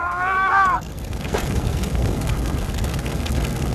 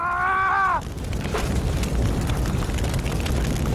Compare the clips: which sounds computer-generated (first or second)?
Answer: first